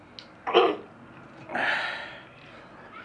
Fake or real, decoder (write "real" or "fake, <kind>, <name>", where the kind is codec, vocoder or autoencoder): real